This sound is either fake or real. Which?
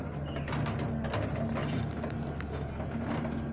real